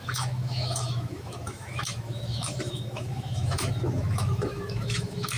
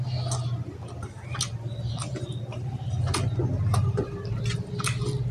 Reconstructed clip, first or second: first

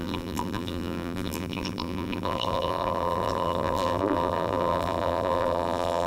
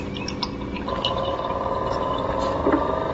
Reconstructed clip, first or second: first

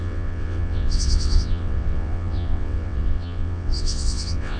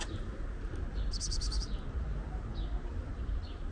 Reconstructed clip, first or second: first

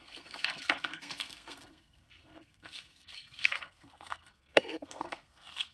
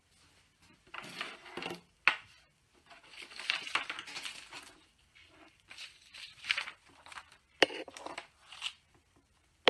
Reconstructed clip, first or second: first